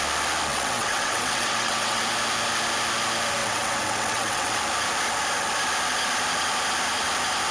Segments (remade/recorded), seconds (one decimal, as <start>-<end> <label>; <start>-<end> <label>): 0.0-0.5 recorded; 0.5-2.0 remade; 2.0-3.4 recorded; 3.4-4.6 remade; 4.6-7.5 recorded